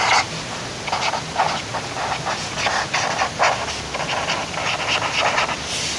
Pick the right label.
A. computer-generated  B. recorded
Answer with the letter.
B